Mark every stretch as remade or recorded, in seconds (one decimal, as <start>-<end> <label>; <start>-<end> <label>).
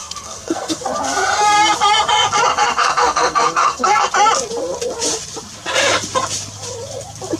0.0-0.8 remade; 0.8-2.5 recorded; 2.5-4.1 remade; 4.1-7.4 recorded